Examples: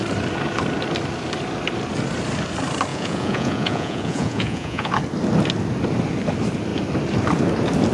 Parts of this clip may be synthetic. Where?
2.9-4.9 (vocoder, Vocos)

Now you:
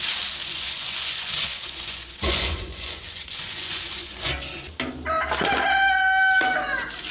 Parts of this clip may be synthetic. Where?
0.4-4.3 (vocoder, Vocos)

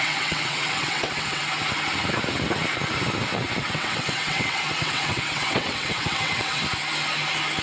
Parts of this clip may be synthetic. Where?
0.0-1.4 (vocoder, WaveNeXt); 3.6-6.6